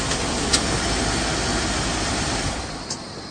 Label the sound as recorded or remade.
recorded